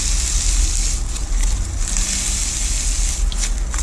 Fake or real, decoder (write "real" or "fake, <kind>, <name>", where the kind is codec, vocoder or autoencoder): real